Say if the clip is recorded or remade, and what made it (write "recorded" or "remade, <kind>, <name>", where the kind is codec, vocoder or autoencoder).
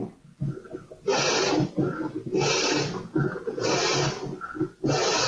recorded